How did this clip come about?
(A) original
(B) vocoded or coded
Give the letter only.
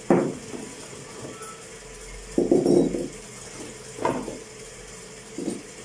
A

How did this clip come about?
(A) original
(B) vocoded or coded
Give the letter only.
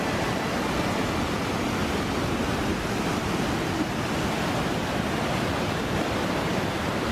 A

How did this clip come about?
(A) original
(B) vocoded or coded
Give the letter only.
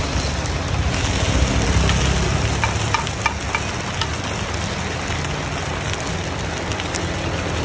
A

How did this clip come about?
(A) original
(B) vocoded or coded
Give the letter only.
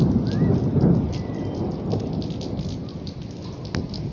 A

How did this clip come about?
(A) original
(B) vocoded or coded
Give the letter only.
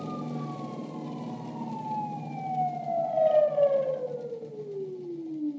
A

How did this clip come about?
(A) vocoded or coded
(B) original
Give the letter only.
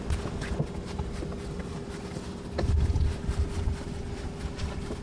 B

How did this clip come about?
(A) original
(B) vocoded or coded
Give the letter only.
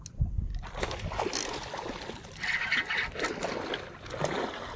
A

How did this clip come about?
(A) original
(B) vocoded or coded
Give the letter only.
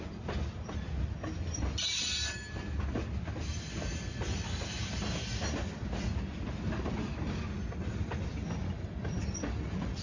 A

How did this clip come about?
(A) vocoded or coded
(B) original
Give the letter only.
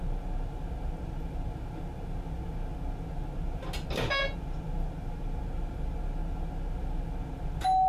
B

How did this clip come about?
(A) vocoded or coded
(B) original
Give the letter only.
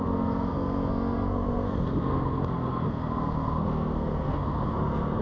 A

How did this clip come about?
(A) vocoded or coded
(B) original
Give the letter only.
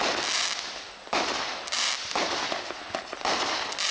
B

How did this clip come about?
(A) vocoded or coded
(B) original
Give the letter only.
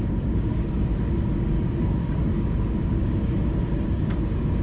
A